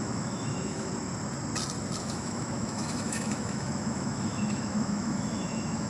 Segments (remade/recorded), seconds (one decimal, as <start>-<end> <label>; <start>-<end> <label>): 0.0-0.9 remade; 0.9-2.0 recorded; 2.0-5.9 remade